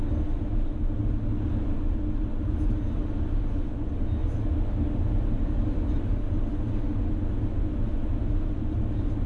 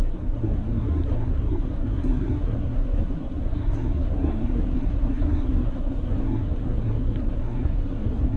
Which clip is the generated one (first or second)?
second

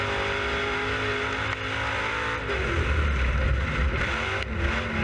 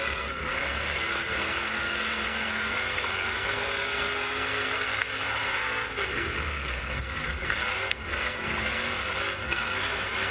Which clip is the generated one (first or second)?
second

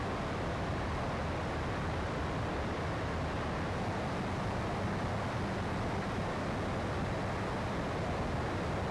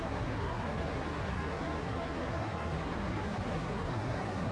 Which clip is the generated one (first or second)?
second